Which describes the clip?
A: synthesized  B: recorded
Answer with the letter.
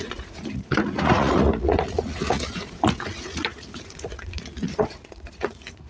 A